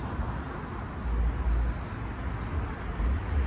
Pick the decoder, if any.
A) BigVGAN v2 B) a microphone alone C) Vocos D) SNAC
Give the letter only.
B